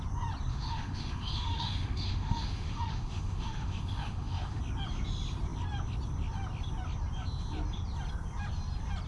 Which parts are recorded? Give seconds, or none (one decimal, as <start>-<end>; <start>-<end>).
0.0-0.5; 4.6-9.1